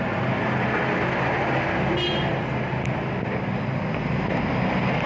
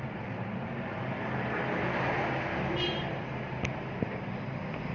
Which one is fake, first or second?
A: second